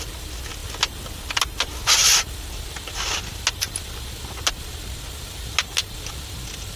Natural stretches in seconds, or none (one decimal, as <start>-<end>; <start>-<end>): 0.0-6.8